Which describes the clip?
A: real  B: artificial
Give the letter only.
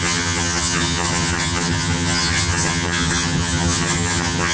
B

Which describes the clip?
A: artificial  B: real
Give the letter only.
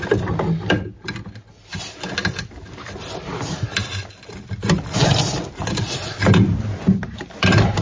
B